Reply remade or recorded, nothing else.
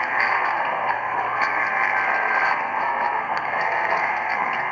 remade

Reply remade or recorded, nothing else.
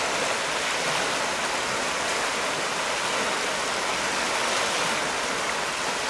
recorded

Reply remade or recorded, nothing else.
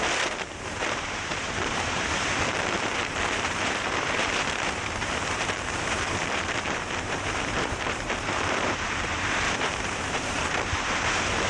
remade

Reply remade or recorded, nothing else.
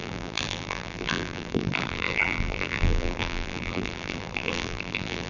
remade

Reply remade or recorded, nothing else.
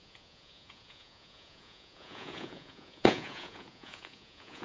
remade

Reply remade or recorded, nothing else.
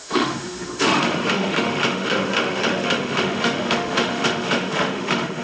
remade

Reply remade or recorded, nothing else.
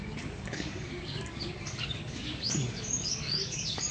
remade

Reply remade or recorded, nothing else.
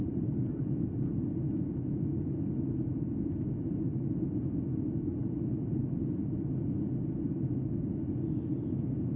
recorded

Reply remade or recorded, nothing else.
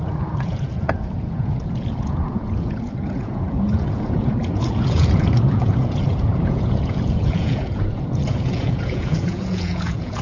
remade